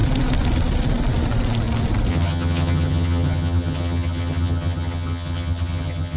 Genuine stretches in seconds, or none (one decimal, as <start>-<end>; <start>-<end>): 0.0-2.1

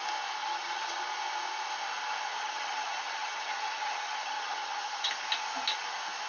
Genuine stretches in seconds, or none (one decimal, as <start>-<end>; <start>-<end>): 0.0-0.4; 1.0-2.3; 5.1-6.3